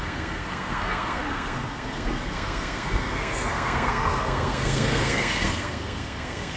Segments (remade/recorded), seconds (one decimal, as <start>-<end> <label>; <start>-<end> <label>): 0.0-6.6 remade